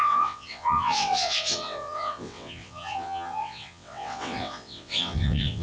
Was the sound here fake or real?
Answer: fake